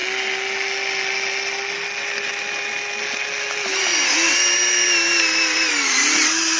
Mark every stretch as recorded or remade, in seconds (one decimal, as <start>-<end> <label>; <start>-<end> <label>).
0.0-6.6 recorded